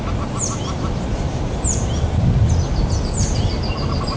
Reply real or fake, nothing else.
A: real